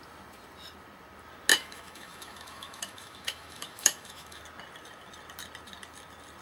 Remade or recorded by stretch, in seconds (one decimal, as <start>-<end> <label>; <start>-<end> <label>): 0.0-1.5 recorded; 1.5-4.4 remade; 4.4-6.4 recorded